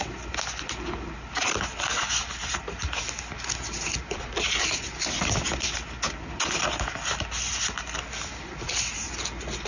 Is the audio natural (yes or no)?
yes